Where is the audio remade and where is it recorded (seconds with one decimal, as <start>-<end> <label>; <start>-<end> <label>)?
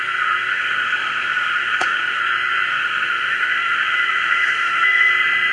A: 0.0-0.5 recorded; 0.5-2.2 remade; 2.2-2.7 recorded; 2.7-5.1 remade; 5.1-5.5 recorded